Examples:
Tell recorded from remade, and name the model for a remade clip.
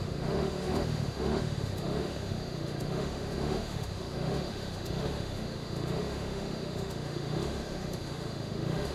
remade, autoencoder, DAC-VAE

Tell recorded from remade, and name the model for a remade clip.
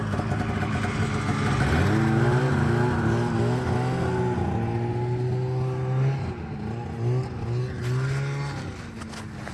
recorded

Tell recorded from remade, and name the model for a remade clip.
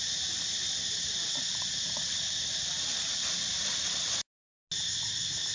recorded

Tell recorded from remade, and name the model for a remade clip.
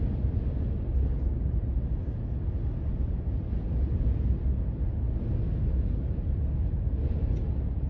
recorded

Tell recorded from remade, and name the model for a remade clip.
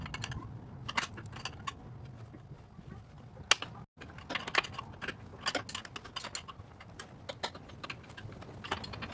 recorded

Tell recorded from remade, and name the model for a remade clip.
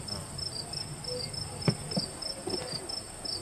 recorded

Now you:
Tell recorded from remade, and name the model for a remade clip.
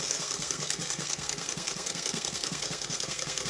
remade, codec, SNAC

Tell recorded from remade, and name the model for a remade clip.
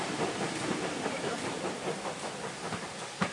recorded